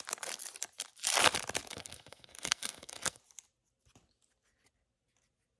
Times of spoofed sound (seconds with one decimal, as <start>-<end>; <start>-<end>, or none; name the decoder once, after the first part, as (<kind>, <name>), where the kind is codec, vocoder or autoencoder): 1.7-3.2 (codec, SNAC)